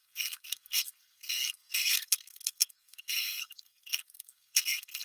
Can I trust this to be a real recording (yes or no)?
no